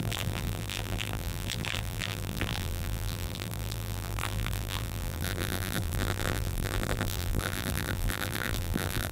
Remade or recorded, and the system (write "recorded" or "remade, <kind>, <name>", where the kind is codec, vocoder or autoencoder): remade, vocoder, BigVGAN v2